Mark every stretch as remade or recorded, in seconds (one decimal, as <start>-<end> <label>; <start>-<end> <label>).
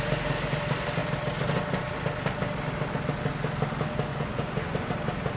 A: 0.0-4.1 recorded; 4.1-4.9 remade; 4.9-5.4 recorded